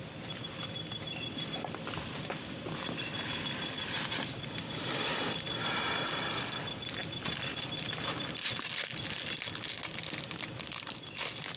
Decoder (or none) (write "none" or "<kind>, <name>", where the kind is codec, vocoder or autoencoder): none